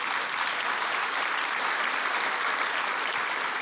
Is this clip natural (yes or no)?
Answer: yes